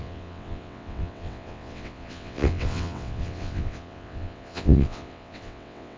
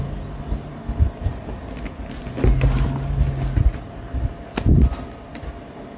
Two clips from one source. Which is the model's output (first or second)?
first